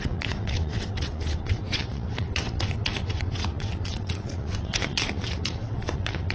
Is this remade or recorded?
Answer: remade